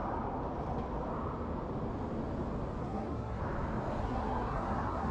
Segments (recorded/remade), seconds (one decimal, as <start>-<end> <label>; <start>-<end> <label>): 0.0-2.8 recorded; 2.8-3.4 remade; 3.4-4.0 recorded; 4.0-5.1 remade